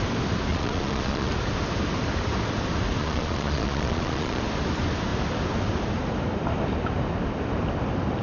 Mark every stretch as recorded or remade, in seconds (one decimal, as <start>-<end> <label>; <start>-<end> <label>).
0.0-0.5 recorded; 0.5-1.3 remade; 1.3-3.0 recorded; 3.0-4.4 remade; 4.4-8.2 recorded